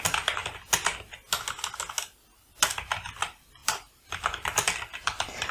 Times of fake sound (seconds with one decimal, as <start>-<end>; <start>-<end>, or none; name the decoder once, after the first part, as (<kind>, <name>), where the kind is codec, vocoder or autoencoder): 3.6-5.5 (vocoder, BigVGAN v2)